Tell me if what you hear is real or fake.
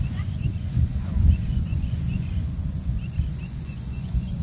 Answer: fake